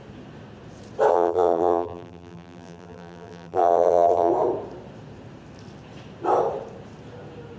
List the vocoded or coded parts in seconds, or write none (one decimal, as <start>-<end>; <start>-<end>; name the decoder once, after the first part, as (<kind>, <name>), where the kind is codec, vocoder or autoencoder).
1.1-4.3 (vocoder, BigVGAN v2)